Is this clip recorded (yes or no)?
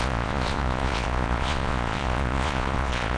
no